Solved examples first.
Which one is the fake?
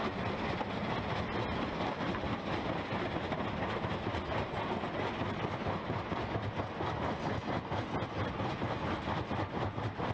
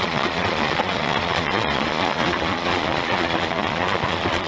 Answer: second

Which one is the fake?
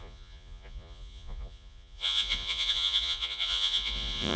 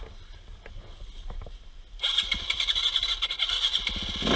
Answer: first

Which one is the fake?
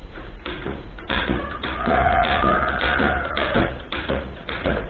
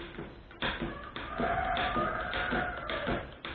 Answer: first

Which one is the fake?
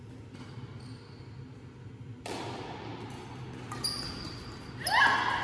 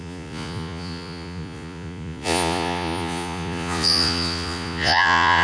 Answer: second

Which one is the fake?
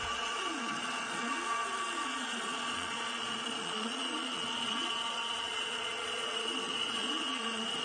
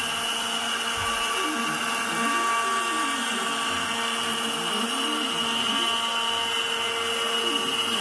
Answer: first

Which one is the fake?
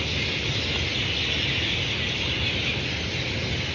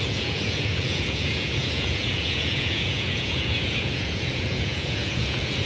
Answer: second